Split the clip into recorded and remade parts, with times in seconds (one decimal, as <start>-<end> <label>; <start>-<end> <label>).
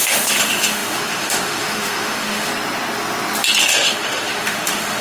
0.0-2.5 remade; 2.5-3.6 recorded; 3.6-5.0 remade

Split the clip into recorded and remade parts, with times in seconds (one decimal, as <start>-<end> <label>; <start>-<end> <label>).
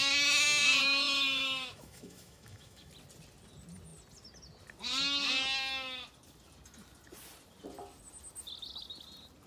0.0-0.8 recorded; 0.8-2.9 remade; 2.9-9.5 recorded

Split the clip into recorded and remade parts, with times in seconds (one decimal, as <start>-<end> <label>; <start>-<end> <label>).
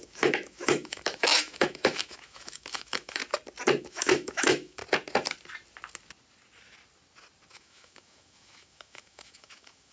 0.0-3.2 remade; 3.2-3.8 recorded; 3.8-4.8 remade; 4.8-7.5 recorded; 7.5-9.9 remade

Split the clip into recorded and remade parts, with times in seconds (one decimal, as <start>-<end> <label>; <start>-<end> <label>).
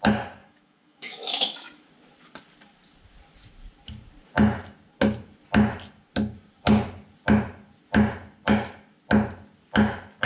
0.0-0.4 recorded; 0.4-1.9 remade; 1.9-10.3 recorded